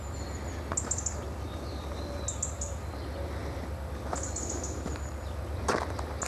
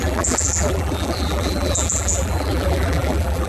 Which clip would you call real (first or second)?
first